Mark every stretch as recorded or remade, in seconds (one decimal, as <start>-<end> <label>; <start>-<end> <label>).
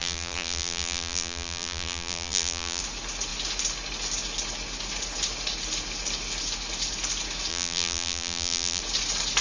0.0-2.8 remade; 2.8-7.5 recorded; 7.5-8.8 remade; 8.8-9.4 recorded